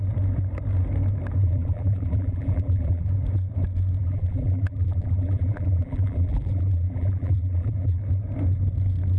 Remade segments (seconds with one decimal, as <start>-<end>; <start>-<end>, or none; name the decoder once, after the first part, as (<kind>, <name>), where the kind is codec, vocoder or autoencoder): 1.4-3.1 (vocoder, BigVGAN v2); 4.0-8.0